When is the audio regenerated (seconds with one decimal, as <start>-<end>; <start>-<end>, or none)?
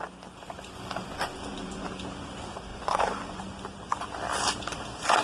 1.1-1.9; 2.7-3.4